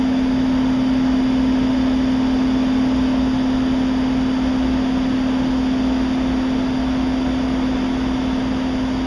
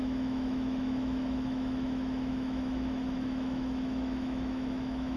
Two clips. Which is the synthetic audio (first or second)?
second